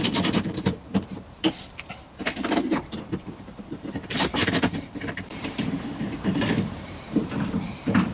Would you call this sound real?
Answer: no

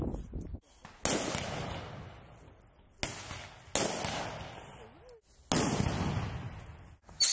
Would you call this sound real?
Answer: yes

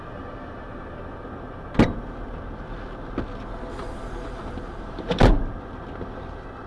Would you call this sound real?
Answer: yes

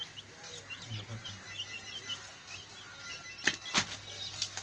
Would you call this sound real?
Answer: yes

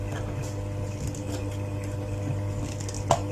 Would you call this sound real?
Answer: yes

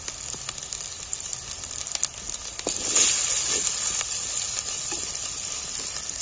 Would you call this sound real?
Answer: yes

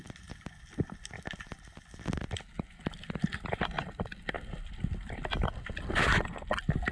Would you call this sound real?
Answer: yes